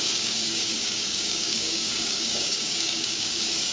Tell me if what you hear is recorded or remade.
remade